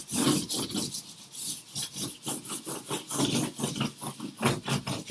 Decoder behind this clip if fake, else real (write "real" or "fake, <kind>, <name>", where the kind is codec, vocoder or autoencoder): real